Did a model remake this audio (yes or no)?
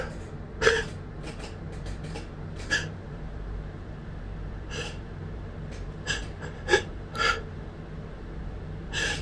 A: yes